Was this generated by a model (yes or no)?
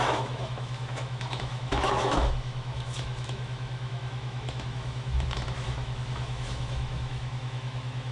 yes